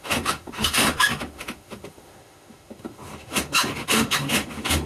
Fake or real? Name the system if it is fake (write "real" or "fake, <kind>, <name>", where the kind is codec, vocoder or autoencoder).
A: fake, autoencoder, DAC-VAE